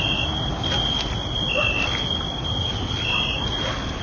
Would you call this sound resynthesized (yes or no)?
no